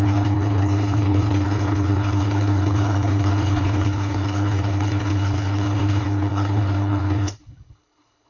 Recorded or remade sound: remade